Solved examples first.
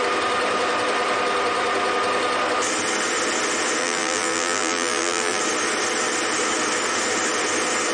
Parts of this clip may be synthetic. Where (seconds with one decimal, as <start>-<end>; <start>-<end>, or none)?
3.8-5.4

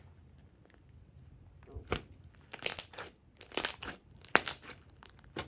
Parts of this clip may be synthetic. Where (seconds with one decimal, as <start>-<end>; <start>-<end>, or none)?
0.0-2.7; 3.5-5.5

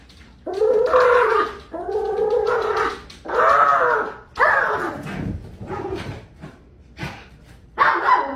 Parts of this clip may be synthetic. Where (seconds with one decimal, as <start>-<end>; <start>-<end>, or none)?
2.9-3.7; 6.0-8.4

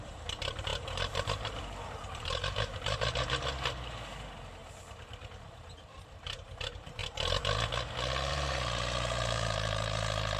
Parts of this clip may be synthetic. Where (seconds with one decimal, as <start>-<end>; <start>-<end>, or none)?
0.0-7.0; 8.3-10.4

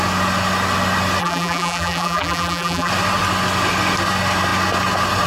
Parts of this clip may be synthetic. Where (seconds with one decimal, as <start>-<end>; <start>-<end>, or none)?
1.2-2.9

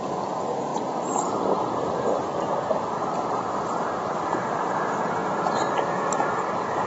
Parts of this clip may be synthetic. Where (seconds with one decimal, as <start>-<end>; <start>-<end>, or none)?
0.7-4.8

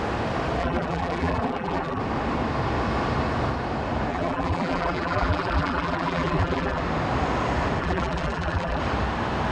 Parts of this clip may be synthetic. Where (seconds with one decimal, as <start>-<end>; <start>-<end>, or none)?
0.6-2.0; 4.1-6.8; 7.8-8.8